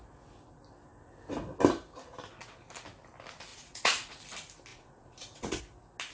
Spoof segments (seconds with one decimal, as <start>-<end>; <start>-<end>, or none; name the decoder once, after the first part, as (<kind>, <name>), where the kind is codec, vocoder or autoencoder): 3.5-4.2 (vocoder, Vocos); 4.7-5.6